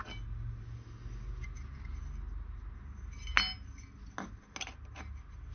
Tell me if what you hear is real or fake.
real